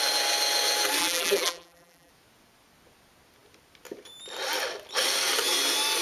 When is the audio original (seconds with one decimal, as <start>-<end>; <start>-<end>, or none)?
0.0-1.0; 2.1-6.0